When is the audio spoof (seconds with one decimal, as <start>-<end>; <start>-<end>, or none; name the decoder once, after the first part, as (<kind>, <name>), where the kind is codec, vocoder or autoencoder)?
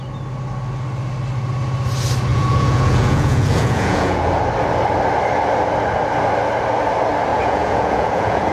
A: 2.3-4.3 (vocoder, Vocos); 7.3-8.5